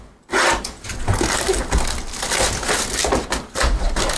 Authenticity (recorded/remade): recorded